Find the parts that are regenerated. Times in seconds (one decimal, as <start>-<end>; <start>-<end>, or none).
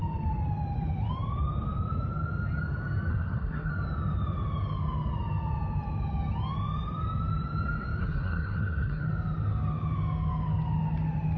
3.1-3.7; 8.0-9.0